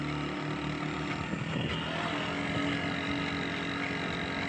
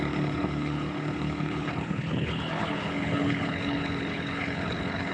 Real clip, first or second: first